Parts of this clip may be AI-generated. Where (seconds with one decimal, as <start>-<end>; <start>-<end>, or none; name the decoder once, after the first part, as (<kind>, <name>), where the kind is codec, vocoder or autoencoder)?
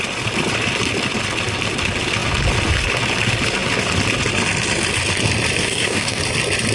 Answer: 5.6-6.2 (codec, DAC)